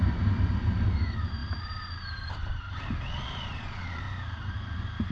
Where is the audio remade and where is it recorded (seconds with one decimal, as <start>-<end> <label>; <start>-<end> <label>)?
0.0-3.1 recorded; 3.1-4.0 remade; 4.0-5.1 recorded